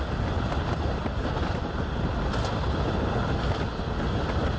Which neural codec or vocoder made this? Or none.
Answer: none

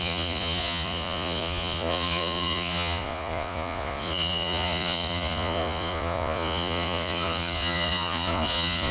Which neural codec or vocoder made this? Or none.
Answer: vocoder, Vocos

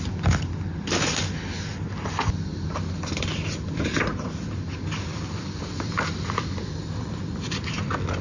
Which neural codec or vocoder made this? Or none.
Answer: none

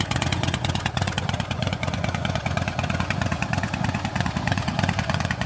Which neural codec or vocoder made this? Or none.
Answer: vocoder, Vocos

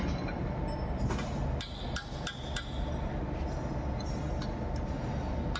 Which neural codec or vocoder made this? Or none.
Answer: none